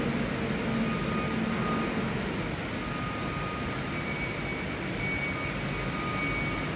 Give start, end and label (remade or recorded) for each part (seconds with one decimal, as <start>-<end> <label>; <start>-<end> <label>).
0.0-6.8 recorded